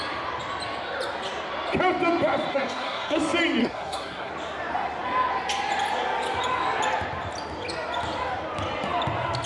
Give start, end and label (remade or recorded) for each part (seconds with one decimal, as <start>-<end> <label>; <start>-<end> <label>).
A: 0.0-2.5 recorded; 2.5-3.2 remade; 3.2-3.6 recorded; 3.6-4.3 remade; 4.3-9.5 recorded